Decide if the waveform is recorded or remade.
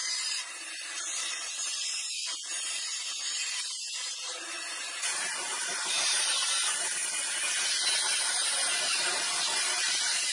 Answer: remade